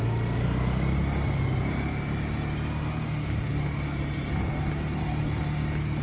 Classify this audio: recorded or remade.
recorded